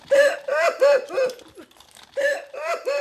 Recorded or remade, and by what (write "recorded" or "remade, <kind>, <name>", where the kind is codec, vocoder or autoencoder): recorded